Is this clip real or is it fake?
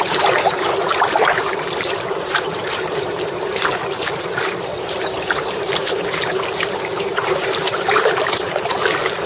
fake